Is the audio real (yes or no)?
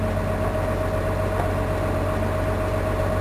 yes